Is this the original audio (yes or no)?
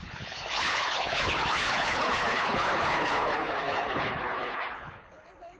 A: no